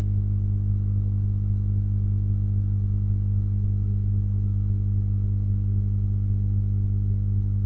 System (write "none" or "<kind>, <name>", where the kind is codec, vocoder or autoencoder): none